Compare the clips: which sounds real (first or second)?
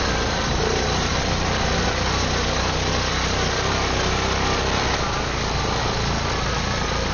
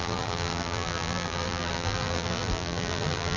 first